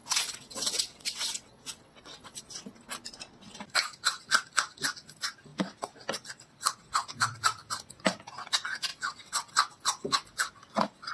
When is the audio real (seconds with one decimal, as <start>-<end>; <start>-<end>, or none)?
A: 2.4-8.9; 9.5-11.1